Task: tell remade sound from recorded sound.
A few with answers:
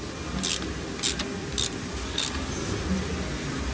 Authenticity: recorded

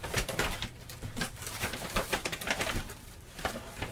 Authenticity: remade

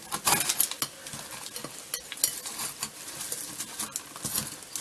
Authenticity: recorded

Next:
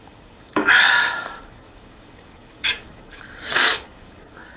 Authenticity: remade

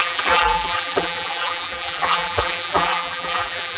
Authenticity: remade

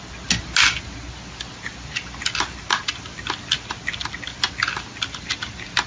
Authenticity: recorded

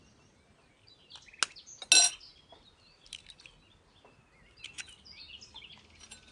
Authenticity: recorded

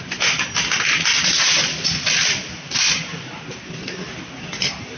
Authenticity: recorded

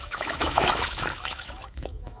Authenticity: remade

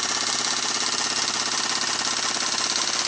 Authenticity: recorded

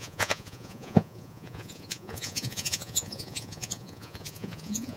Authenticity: remade